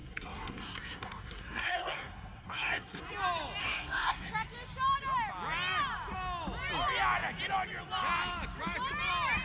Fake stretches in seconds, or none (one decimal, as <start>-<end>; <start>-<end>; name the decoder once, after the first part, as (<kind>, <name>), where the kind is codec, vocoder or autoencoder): 0.0-3.0 (codec, SNAC); 3.6-4.3